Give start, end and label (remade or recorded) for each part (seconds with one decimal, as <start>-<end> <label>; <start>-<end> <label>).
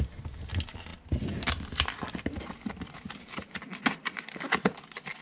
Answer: 0.0-5.2 recorded